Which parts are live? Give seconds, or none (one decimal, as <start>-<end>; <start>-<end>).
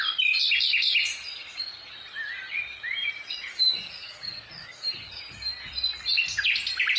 0.0-3.5; 5.2-7.0